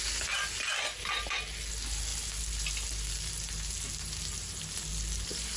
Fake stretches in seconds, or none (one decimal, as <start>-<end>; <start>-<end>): none